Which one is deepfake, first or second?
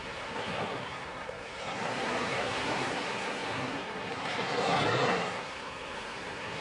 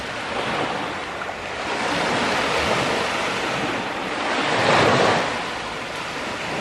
first